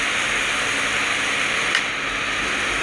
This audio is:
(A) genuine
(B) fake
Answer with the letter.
A